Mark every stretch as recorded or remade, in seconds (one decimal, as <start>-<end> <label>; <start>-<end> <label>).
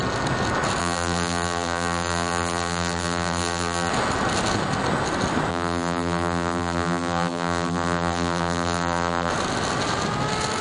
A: 0.0-0.8 recorded; 0.8-3.9 remade; 3.9-5.5 recorded; 5.5-9.3 remade; 9.3-10.6 recorded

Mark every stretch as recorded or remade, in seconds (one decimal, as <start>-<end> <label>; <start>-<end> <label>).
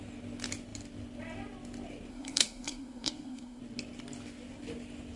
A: 0.0-2.1 recorded; 2.1-3.6 remade; 3.6-5.2 recorded